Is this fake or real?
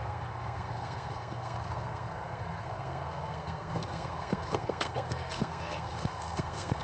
fake